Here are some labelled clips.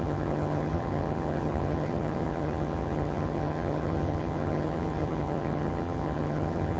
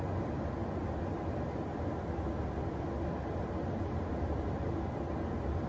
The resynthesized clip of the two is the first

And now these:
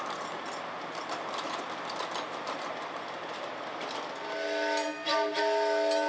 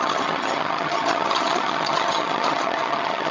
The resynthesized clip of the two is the second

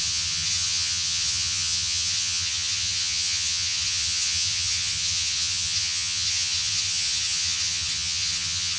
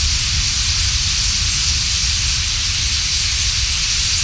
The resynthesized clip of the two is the first